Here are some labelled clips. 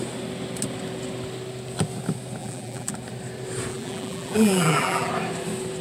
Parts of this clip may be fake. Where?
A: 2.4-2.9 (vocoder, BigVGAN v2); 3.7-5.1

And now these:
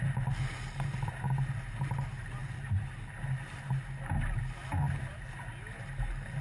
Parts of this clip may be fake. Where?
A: none